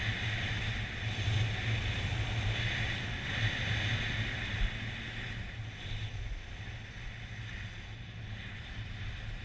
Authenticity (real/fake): real